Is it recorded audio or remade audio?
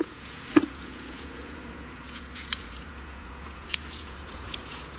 remade